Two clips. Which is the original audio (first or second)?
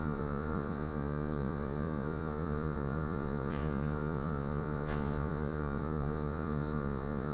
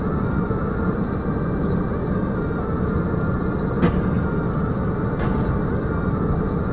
second